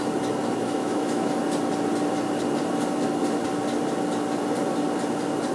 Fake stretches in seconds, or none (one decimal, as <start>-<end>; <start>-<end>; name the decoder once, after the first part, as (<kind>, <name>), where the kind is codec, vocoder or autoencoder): 0.6-1.4 (autoencoder, DAC-VAE)